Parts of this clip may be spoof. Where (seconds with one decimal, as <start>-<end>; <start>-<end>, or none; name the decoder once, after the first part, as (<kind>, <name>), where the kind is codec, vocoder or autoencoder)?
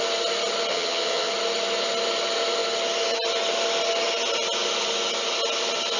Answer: 0.7-1.3 (vocoder, HiFi-GAN)